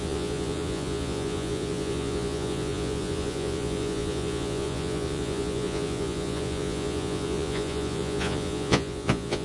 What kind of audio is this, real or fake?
fake